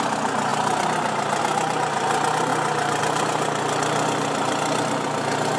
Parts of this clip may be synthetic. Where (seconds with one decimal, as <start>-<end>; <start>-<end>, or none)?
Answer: none